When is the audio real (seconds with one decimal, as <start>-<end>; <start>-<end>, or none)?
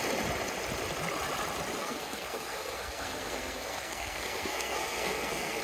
0.0-1.8